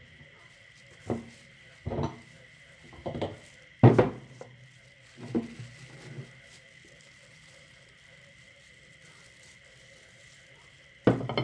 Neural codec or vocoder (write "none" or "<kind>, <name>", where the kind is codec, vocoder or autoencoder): none